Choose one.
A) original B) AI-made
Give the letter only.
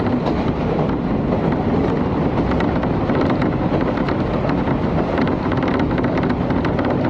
A